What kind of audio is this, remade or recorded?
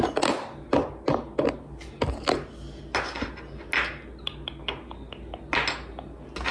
recorded